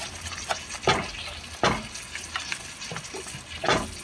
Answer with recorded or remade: recorded